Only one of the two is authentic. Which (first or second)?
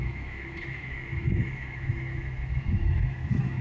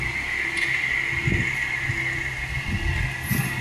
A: second